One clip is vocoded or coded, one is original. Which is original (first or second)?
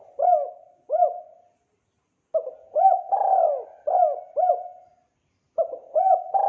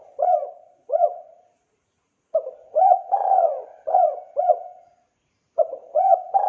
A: first